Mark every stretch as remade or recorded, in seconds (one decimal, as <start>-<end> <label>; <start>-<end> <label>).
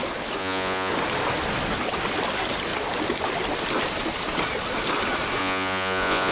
0.0-0.4 recorded; 0.4-0.9 remade; 0.9-5.4 recorded; 5.4-6.3 remade